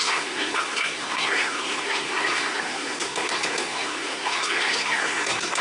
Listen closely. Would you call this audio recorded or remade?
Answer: remade